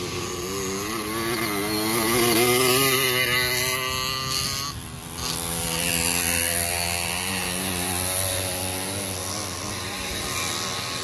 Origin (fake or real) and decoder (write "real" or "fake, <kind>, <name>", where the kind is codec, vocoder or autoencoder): real